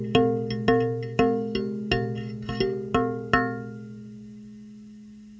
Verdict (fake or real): real